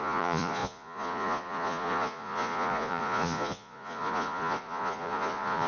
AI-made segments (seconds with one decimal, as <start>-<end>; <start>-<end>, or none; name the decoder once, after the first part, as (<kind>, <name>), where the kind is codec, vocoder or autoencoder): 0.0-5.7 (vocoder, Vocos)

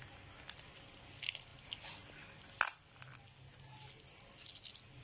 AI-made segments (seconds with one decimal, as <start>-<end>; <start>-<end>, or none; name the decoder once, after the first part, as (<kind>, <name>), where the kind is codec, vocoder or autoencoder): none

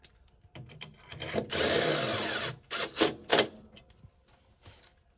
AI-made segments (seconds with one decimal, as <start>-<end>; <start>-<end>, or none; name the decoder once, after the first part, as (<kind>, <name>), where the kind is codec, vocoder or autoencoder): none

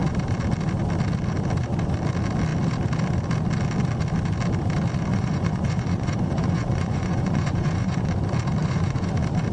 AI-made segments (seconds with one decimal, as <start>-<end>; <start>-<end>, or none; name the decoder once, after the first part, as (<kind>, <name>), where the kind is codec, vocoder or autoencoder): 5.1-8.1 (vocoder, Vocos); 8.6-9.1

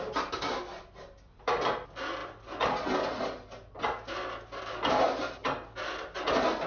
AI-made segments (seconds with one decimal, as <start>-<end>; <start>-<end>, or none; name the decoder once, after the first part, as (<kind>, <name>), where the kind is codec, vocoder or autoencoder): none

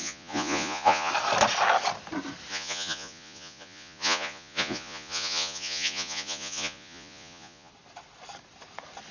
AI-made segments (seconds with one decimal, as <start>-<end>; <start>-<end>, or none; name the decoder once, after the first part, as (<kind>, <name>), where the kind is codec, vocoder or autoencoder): 0.0-1.1 (vocoder, Vocos); 2.5-7.7